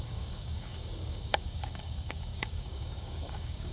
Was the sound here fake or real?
fake